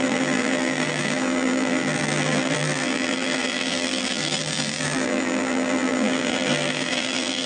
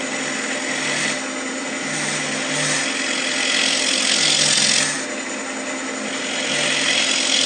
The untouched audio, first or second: second